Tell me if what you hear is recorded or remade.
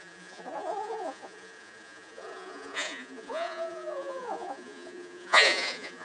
remade